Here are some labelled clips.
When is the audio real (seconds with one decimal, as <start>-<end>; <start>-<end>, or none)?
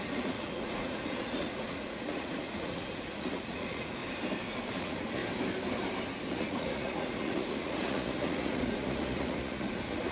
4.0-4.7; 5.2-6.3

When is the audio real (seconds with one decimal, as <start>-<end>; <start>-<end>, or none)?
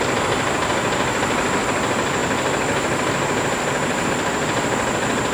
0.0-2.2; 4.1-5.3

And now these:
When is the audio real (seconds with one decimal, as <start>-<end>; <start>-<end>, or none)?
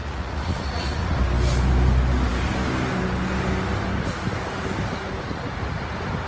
1.2-6.3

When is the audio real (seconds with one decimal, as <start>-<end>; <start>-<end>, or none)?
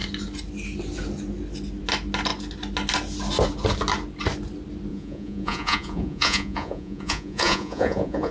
0.0-4.9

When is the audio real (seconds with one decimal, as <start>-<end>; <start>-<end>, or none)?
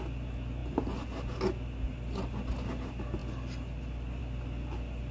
0.0-5.1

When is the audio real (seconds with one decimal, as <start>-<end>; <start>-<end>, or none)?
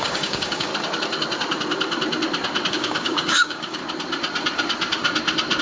0.7-2.7; 3.8-5.6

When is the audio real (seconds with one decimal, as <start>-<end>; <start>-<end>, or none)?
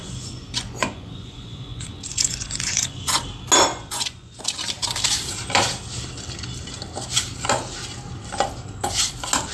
3.2-3.7; 4.4-9.5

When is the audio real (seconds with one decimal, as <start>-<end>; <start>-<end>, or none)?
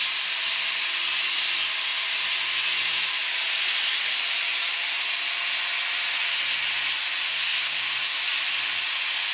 0.0-7.3; 7.8-9.3